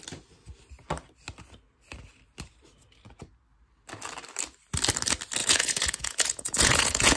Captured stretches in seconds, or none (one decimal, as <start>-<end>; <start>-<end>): 0.0-5.4